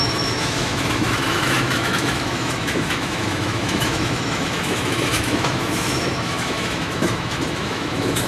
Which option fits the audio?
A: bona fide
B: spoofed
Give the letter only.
B